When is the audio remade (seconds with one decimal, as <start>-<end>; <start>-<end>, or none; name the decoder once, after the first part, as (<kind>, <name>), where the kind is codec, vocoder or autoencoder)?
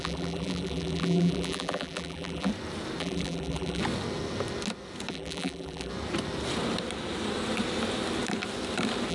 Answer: 0.0-2.5 (vocoder, BigVGAN v2); 3.0-3.8; 5.1-5.9